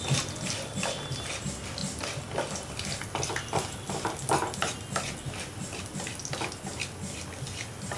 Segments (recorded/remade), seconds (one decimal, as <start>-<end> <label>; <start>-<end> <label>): 0.0-8.0 recorded